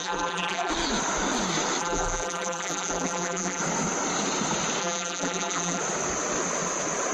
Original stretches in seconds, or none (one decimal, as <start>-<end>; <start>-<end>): 0.7-1.8; 3.6-4.8; 5.8-7.1